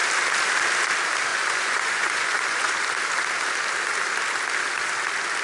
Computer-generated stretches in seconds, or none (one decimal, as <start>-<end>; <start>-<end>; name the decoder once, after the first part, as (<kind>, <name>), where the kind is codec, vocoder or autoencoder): 1.3-2.7 (vocoder, Vocos)

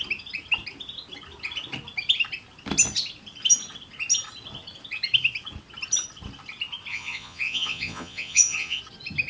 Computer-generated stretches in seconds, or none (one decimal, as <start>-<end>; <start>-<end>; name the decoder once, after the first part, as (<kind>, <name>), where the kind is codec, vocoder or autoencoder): 6.9-8.8 (vocoder, Vocos)